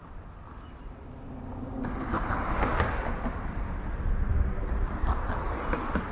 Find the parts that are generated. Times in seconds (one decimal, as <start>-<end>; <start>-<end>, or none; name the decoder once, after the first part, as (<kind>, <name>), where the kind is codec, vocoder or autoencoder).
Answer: none